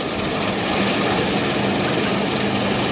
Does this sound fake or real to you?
real